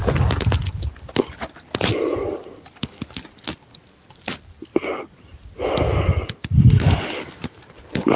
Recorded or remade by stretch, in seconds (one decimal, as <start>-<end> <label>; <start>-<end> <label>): 0.0-1.2 recorded; 1.2-4.7 remade; 4.7-5.5 recorded; 5.5-6.4 remade; 6.4-7.0 recorded; 7.0-8.2 remade